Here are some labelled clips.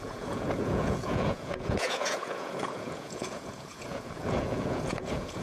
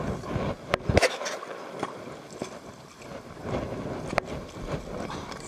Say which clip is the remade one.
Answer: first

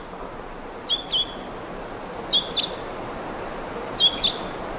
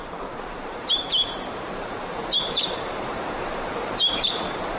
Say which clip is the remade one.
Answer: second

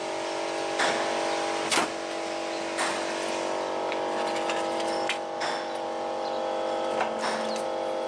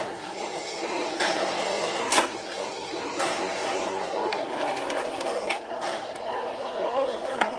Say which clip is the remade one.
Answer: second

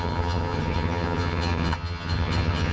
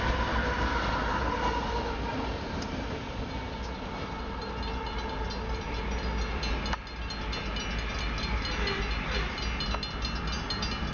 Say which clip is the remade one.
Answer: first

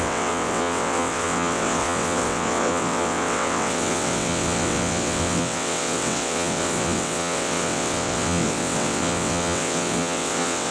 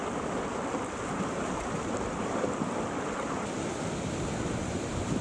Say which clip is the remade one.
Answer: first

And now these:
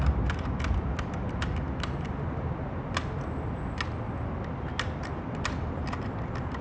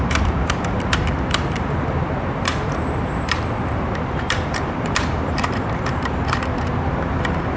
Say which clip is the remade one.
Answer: second